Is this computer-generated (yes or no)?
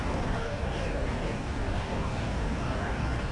yes